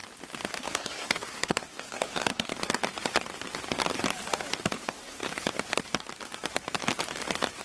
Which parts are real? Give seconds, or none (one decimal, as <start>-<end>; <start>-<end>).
0.0-0.6; 2.5-4.8; 5.2-7.6